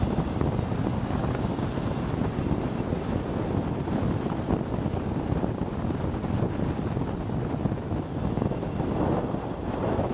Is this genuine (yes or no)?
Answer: yes